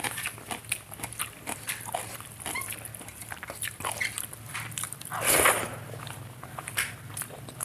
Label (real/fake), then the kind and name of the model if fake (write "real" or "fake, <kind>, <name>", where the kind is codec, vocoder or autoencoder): fake, vocoder, BigVGAN v2